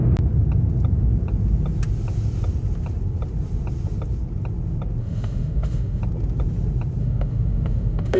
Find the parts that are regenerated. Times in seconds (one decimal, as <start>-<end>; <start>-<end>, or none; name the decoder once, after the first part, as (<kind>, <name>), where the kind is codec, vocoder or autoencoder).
5.0-6.0 (autoencoder, DAC-VAE); 7.0-8.2

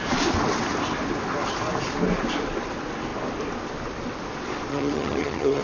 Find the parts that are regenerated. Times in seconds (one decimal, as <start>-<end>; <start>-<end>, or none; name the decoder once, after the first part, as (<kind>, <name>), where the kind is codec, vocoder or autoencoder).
4.7-5.6 (vocoder, HiFi-GAN)

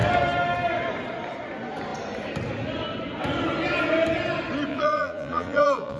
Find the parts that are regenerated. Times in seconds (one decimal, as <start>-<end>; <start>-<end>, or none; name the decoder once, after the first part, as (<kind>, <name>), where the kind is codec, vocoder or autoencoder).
4.7-6.0 (vocoder, Vocos)

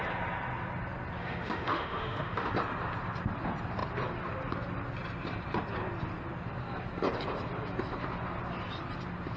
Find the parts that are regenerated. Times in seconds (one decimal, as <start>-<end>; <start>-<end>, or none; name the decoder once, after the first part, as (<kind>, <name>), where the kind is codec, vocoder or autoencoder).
1.2-2.5 (autoencoder, DAC-VAE)

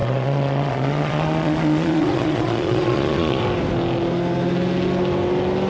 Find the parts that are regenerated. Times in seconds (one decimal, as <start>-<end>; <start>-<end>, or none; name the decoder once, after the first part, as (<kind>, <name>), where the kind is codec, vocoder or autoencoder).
0.0-3.4 (vocoder, Vocos)

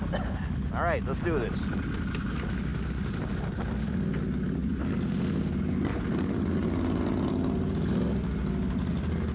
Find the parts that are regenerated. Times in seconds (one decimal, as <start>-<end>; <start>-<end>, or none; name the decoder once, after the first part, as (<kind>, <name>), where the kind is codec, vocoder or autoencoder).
none

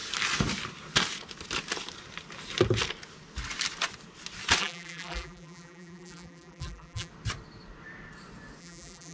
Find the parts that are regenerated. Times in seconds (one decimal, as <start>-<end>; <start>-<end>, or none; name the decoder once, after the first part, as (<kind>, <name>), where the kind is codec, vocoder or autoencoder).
4.6-7.1 (vocoder, BigVGAN v2); 8.6-9.1